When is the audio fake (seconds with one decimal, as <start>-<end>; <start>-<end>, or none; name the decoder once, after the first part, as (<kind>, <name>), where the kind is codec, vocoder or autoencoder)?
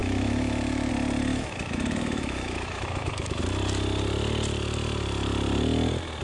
0.0-0.9 (autoencoder, DAC-VAE); 1.3-3.4